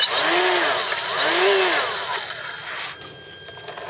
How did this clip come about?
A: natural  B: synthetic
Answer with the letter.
A